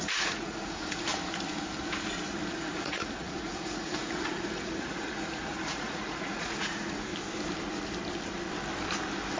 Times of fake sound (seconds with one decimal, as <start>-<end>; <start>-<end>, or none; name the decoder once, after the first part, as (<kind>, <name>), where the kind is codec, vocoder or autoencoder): 0.0-1.1 (vocoder, Vocos); 2.5-7.1